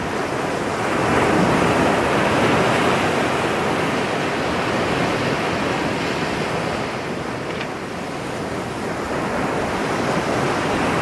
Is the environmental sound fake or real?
real